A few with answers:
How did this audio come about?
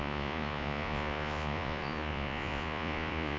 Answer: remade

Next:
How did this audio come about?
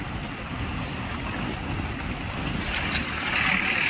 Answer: recorded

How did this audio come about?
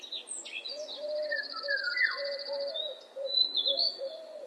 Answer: remade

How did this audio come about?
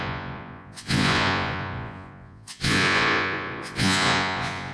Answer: remade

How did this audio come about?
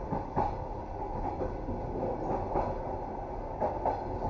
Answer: recorded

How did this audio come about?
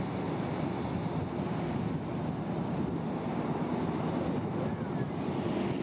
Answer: recorded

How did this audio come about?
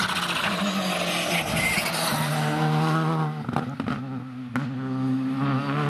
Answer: recorded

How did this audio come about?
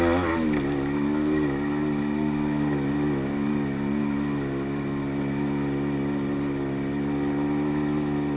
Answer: recorded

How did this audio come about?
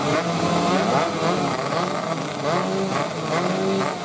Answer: recorded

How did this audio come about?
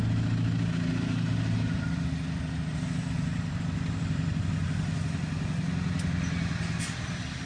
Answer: recorded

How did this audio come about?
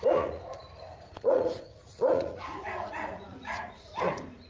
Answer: remade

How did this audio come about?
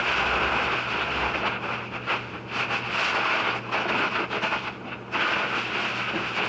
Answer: recorded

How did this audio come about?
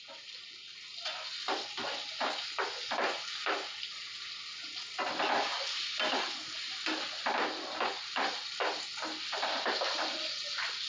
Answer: recorded